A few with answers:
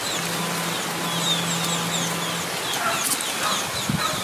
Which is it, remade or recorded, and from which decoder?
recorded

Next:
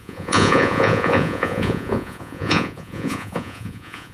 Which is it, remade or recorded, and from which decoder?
remade, vocoder, Vocos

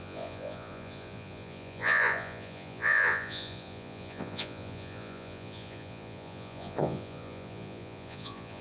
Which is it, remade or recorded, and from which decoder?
remade, vocoder, Vocos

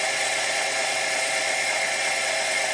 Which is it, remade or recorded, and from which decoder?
remade, vocoder, Vocos